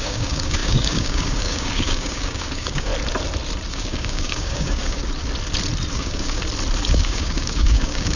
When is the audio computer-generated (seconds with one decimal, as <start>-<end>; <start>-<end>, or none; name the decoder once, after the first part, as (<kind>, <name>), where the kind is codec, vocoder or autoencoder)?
0.0-2.9 (codec, DAC); 3.7-5.0; 5.9-6.4; 6.9-8.2